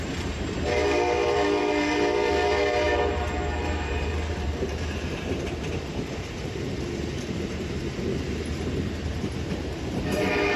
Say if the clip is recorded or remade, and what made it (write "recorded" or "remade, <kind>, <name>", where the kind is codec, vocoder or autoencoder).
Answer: remade, vocoder, BigVGAN v2